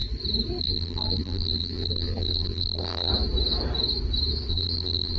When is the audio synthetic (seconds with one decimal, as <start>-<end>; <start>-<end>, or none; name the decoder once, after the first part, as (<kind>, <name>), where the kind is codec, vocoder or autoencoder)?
0.6-3.1 (vocoder, BigVGAN v2); 4.5-5.2